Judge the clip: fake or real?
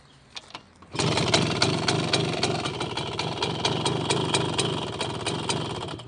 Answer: real